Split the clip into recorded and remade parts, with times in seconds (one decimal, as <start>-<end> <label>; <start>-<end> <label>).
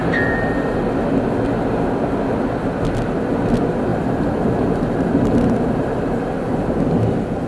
0.0-0.8 remade; 0.8-3.9 recorded; 3.9-6.4 remade; 6.4-7.5 recorded